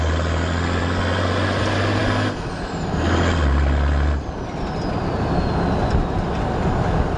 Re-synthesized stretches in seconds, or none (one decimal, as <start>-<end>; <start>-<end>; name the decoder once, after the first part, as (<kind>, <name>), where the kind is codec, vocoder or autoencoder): none